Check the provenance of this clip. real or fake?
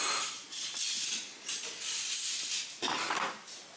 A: real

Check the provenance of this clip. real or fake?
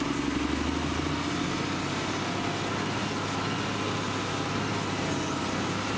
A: real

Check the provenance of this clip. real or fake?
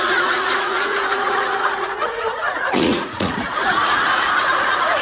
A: fake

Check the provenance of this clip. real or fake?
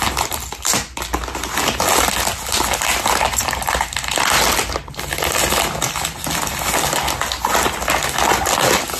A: real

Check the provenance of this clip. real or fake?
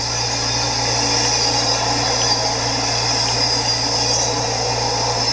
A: real